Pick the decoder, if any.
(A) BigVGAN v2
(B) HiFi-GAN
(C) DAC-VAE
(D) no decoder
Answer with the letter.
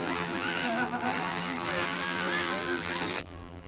A